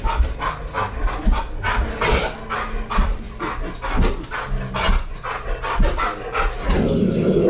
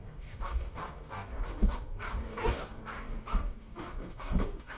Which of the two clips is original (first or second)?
first